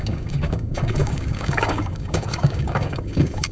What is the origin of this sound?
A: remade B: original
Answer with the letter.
A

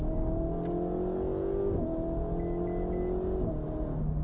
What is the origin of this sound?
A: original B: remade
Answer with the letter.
A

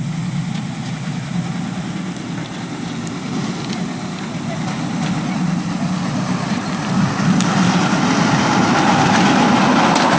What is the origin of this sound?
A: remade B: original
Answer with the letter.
B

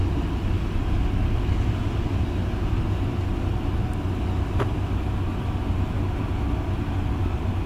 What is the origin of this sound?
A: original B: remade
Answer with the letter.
A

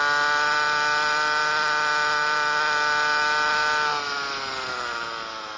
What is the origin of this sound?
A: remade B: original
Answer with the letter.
B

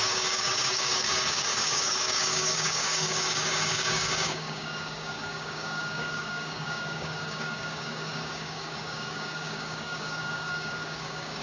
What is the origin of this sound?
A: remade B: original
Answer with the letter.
A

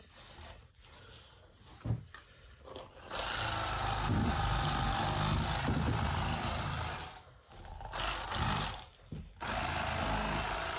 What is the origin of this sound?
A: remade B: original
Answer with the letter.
B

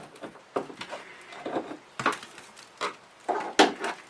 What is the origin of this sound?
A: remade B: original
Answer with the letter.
B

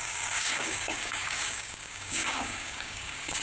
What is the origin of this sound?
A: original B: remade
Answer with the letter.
B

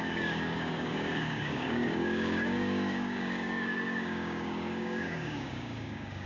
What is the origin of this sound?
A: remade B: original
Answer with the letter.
A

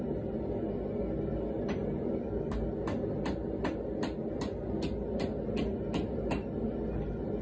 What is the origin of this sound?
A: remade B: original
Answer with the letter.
B